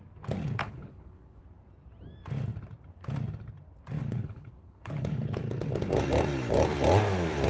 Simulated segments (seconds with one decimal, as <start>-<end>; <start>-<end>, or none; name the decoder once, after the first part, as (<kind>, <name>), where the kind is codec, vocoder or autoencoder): 0.6-1.4 (codec, HILCodec); 4.0-5.4